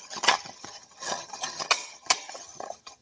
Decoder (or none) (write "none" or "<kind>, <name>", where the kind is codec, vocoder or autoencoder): vocoder, HiFi-GAN